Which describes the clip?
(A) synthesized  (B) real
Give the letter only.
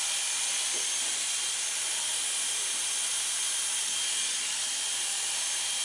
A